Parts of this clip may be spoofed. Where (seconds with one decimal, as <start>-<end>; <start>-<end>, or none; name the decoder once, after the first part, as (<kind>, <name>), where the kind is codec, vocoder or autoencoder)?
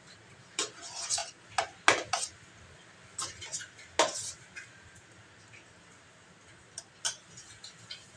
none